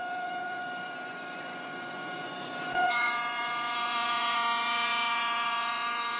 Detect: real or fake fake